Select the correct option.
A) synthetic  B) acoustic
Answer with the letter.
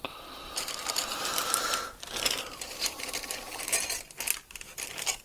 B